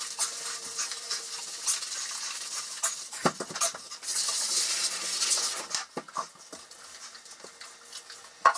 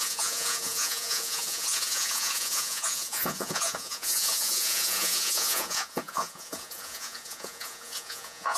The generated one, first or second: second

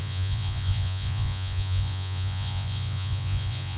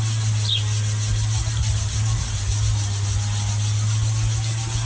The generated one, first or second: first